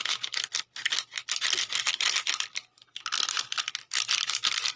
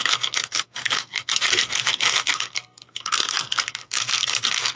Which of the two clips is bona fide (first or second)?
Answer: first